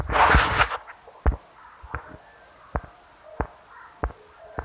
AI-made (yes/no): no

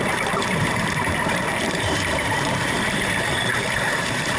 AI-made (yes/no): yes